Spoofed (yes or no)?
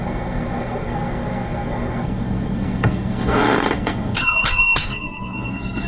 yes